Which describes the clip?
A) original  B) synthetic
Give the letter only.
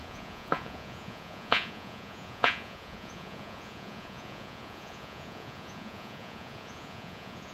B